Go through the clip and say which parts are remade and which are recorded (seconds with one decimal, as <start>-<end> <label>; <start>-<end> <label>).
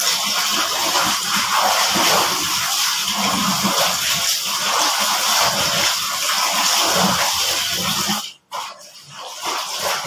0.0-0.5 recorded; 0.5-1.9 remade; 1.9-10.1 recorded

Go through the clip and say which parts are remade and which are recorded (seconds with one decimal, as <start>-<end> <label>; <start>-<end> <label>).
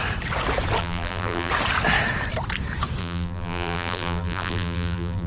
0.0-0.8 recorded; 0.8-1.5 remade; 1.5-3.0 recorded; 3.0-5.3 remade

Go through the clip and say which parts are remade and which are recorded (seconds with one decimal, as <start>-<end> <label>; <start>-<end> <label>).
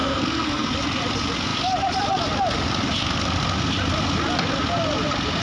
0.0-0.7 remade; 0.7-5.4 recorded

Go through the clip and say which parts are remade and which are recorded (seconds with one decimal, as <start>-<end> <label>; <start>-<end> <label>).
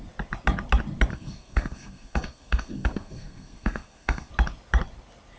0.0-1.1 recorded; 1.1-4.3 remade; 4.3-5.4 recorded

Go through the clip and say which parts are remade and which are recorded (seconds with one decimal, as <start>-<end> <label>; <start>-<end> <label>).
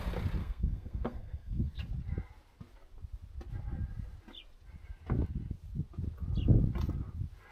0.0-0.4 recorded; 0.4-1.8 remade; 1.8-7.5 recorded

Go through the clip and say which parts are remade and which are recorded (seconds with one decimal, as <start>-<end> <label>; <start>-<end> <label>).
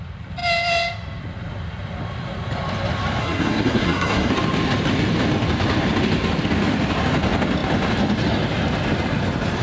0.0-3.2 recorded; 3.2-4.3 remade; 4.3-9.6 recorded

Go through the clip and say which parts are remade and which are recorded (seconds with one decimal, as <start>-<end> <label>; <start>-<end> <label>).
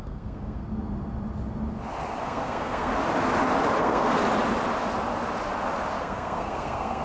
0.0-0.6 remade; 0.6-2.2 recorded; 2.2-2.9 remade; 2.9-3.8 recorded; 3.8-4.2 remade; 4.2-6.0 recorded; 6.0-7.0 remade